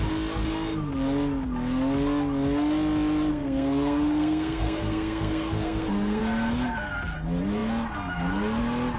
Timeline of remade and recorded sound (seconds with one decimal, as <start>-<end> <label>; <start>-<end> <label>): 0.0-3.3 recorded; 3.3-6.2 remade; 6.2-9.0 recorded